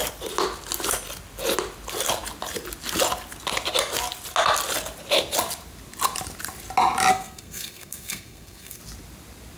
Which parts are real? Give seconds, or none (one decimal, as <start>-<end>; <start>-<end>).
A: 0.0-7.1; 8.8-9.6

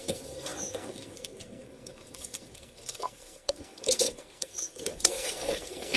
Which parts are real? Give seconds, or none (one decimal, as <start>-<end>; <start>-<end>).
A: none

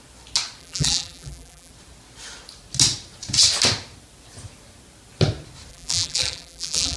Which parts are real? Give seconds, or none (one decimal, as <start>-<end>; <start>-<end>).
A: 0.0-0.6; 1.7-5.7

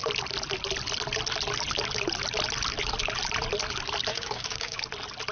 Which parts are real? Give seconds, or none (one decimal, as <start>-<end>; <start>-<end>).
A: 0.0-4.1; 4.8-5.3

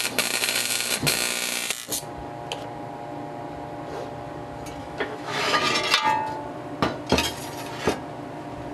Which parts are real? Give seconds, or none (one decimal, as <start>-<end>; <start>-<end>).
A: 0.0-4.8; 5.6-8.7

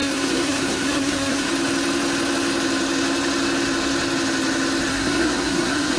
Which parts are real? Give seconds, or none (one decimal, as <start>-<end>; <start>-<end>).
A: 1.5-4.9

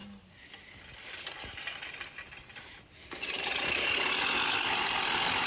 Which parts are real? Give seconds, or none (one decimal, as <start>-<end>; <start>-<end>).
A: 0.0-5.5

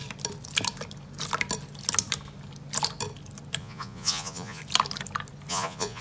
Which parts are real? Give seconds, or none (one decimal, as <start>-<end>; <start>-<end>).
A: 0.0-3.6; 4.6-5.5